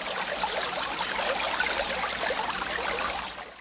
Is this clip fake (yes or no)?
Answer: no